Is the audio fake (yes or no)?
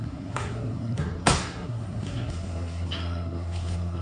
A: yes